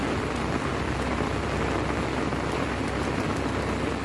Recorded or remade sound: recorded